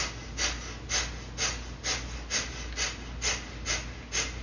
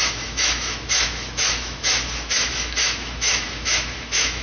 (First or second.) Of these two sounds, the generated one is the second